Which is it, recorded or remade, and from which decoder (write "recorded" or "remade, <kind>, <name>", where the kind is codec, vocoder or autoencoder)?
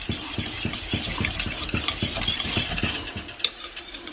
recorded